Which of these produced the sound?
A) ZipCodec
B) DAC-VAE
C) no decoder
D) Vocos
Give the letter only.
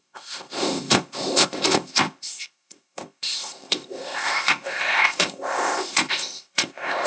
A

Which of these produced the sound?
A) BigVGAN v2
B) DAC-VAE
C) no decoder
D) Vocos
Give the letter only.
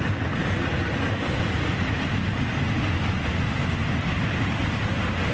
C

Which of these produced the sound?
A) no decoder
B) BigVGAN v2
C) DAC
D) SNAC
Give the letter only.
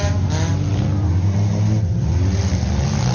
A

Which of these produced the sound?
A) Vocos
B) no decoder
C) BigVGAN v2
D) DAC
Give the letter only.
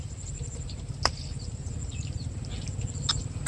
B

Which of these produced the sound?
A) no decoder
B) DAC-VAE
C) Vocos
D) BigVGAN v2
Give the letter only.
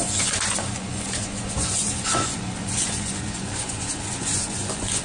C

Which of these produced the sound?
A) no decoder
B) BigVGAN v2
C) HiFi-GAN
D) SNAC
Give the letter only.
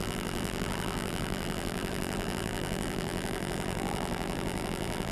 B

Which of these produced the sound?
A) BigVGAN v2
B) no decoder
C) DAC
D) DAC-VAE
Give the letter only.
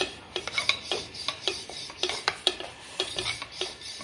A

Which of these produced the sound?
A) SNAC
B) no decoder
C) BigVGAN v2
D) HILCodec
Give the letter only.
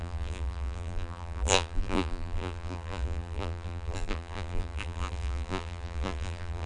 C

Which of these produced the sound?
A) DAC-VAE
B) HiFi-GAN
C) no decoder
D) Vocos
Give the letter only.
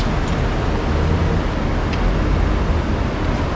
C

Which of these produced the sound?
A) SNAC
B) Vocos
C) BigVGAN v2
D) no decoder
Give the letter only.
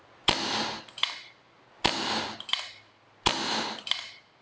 D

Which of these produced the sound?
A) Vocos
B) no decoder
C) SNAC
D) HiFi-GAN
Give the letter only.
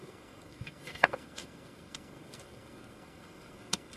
C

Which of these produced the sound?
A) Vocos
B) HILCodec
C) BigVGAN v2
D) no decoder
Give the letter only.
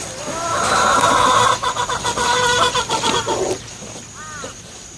D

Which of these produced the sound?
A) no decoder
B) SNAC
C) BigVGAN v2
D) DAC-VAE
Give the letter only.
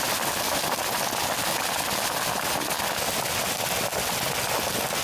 A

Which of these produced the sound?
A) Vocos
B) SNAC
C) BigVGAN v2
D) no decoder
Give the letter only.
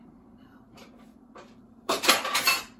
C